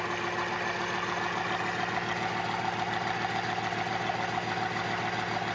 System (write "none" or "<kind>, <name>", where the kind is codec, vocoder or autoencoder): none